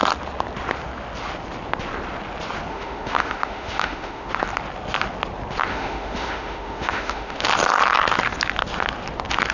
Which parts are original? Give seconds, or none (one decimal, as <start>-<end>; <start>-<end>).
0.0-2.7; 4.3-5.7; 7.5-9.5